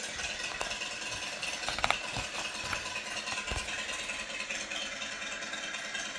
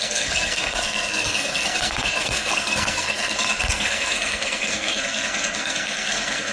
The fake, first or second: second